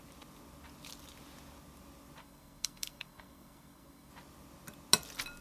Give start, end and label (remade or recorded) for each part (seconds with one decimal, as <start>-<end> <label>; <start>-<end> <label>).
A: 0.0-2.2 recorded; 2.2-4.1 remade; 4.1-5.4 recorded